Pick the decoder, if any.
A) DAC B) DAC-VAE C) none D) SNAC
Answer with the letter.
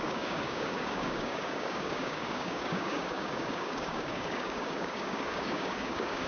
A